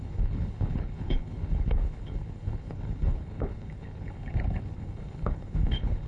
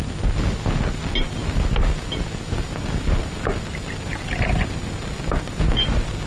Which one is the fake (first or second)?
first